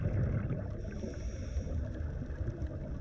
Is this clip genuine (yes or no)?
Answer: yes